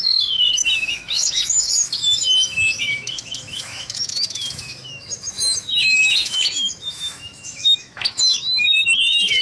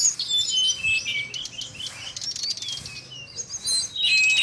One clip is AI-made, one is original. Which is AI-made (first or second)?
first